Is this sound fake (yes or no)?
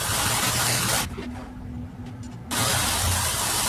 no